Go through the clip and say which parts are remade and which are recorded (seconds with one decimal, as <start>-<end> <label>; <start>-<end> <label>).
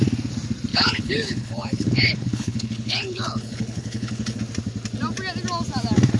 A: 0.0-0.7 recorded; 0.7-4.4 remade; 4.4-6.2 recorded